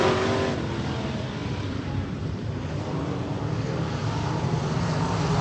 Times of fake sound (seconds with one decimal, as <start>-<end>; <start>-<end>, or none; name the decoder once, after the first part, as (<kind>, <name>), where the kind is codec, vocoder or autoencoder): 1.4-4.6 (vocoder, BigVGAN v2)